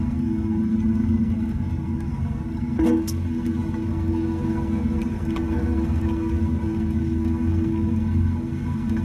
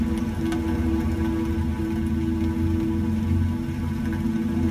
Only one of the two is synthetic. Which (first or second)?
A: first